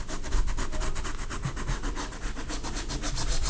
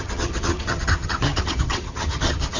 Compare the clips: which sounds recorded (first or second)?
first